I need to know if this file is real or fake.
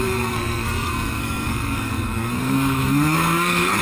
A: fake